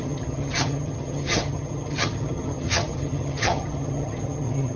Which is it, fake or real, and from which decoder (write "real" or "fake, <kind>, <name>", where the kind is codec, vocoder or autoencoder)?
fake, vocoder, HiFi-GAN